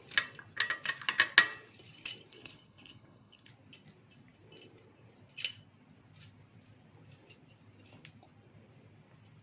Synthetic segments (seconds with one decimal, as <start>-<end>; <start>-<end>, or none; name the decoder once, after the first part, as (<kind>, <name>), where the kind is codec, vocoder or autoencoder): 2.3-3.5 (codec, HILCodec)

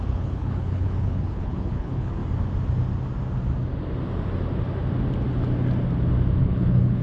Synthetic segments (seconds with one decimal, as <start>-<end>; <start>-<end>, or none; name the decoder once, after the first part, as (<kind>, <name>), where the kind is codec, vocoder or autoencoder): 0.0-2.2 (codec, HILCodec); 6.4-7.0

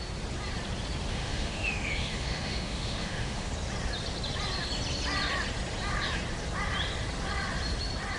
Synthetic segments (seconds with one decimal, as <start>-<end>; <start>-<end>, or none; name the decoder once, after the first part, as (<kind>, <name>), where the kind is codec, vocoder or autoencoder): 1.1-3.5 (autoencoder, DAC-VAE)

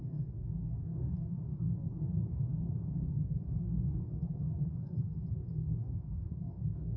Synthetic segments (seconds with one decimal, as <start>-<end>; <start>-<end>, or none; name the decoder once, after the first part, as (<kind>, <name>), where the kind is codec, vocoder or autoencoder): 0.0-7.0 (codec, DAC)

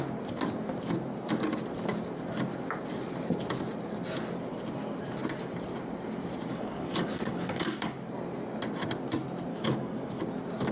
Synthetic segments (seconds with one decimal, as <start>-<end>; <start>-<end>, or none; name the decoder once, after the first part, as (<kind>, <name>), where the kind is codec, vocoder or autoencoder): 6.5-8.1 (codec, DAC); 9.5-10.2

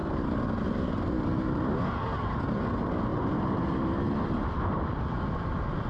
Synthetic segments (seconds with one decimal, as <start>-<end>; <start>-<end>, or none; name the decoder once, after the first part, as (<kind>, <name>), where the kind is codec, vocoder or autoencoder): none

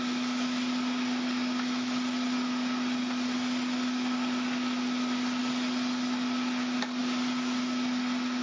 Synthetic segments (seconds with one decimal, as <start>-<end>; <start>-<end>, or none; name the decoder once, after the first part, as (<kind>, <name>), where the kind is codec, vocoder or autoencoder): none